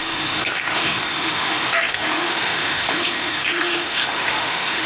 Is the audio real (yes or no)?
no